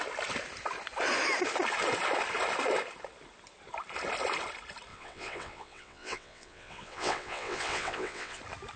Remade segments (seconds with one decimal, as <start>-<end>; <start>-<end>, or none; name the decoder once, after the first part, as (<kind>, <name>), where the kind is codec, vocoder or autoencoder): 4.9-8.4 (vocoder, WaveNeXt)